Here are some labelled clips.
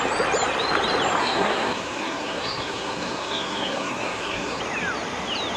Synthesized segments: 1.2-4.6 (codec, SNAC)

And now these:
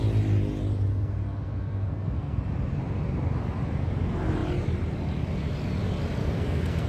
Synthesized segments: 0.9-2.4 (codec, SNAC); 6.2-6.9

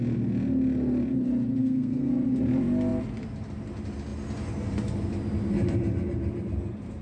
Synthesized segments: 1.6-2.1 (codec, SNAC)

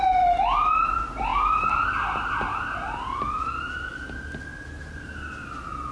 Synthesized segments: none